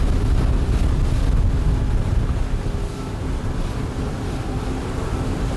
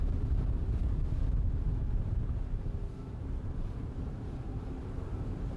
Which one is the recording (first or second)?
first